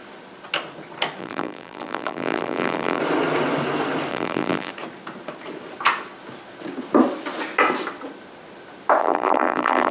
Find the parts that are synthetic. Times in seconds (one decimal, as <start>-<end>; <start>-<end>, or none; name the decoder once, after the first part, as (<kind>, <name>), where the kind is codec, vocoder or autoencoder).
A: 1.2-3.0 (vocoder, BigVGAN v2); 4.1-4.7; 9.0-9.9